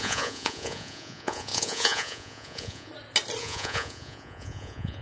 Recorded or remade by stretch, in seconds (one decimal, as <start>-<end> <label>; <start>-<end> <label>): 0.0-2.9 remade; 2.9-3.4 recorded; 3.4-5.0 remade